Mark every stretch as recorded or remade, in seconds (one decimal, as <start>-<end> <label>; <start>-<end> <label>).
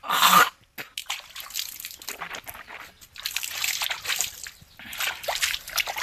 0.0-6.0 recorded